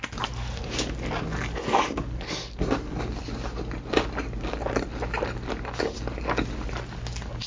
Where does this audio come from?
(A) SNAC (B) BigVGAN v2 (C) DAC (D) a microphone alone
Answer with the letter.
D